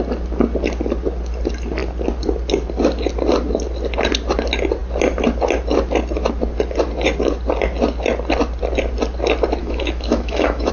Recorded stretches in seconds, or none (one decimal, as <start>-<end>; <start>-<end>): 0.0-9.6